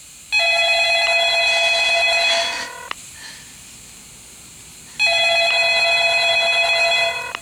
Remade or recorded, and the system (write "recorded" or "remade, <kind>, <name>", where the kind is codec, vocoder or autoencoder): recorded